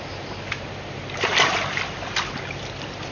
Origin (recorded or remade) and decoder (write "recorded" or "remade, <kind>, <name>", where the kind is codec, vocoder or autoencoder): recorded